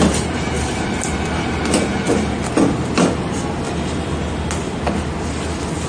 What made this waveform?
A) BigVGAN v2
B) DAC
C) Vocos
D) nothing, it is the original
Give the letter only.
D